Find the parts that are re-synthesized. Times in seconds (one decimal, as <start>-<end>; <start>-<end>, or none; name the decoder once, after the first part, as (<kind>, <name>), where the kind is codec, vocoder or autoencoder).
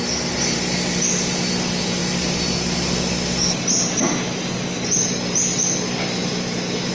none